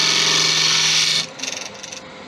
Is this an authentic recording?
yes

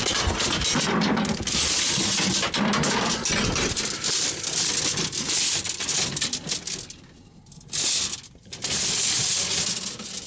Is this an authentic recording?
yes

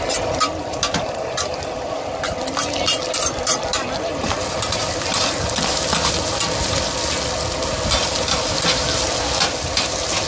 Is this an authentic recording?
yes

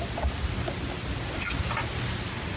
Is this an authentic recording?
yes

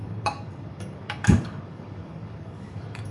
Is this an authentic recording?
no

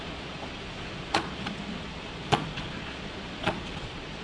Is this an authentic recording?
no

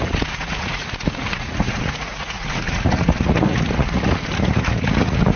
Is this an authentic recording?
no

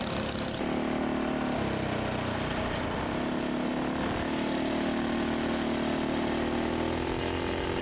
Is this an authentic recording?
yes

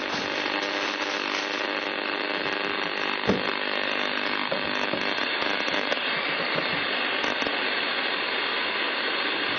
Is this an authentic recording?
yes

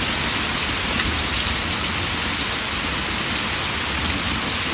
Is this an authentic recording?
yes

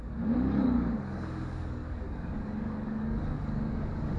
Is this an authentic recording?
no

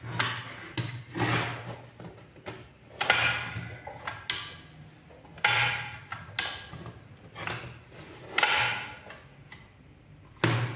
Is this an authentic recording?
yes